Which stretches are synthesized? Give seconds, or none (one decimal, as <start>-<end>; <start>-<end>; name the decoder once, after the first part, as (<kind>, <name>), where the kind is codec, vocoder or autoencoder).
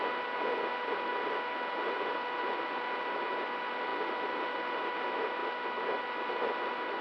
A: none